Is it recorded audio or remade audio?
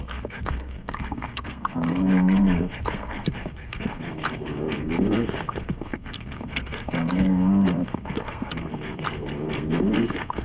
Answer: remade